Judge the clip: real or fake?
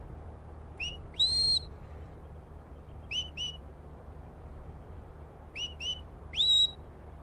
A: fake